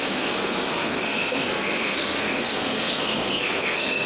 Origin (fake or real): fake